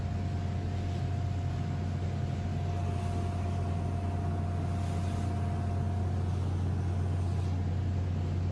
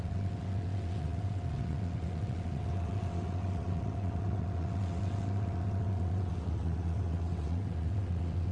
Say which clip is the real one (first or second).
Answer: first